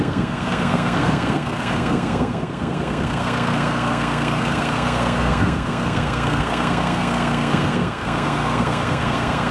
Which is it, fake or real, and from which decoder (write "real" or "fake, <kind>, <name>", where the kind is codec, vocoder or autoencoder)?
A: fake, codec, SNAC